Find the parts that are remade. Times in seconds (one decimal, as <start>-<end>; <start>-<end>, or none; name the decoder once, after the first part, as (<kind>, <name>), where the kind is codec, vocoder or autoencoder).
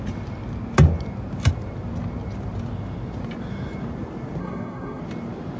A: 4.4-5.0 (codec, SNAC)